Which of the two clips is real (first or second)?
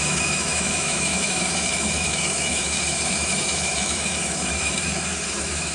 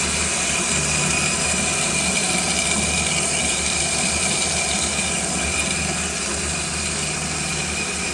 second